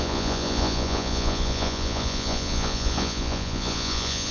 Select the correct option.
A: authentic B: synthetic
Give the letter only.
B